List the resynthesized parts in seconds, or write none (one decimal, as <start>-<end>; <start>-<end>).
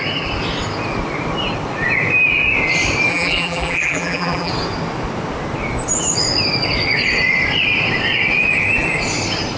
3.1-4.5